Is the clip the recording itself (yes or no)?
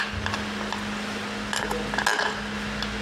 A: yes